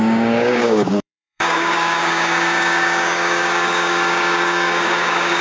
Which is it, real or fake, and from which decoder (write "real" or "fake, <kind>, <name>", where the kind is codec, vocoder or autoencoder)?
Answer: fake, codec, DAC